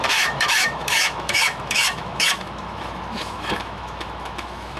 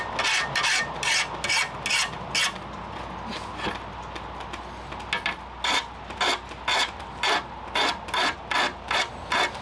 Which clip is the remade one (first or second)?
first